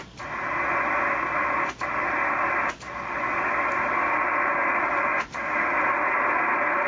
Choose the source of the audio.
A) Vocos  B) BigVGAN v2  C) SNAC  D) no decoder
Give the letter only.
D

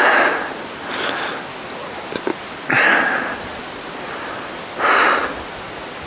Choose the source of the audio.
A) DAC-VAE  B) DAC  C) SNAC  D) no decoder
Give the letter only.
D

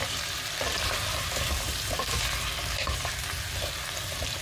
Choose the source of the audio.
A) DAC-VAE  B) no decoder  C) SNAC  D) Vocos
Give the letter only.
B